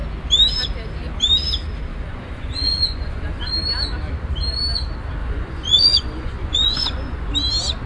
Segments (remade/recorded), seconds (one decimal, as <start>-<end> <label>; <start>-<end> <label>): 0.0-1.9 recorded; 1.9-3.5 remade; 3.5-5.2 recorded; 5.2-7.3 remade; 7.3-7.9 recorded